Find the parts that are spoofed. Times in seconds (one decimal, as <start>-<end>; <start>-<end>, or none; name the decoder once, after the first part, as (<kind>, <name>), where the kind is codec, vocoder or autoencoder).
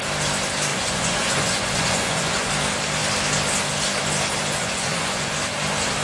0.7-2.5 (vocoder, Vocos); 4.6-5.3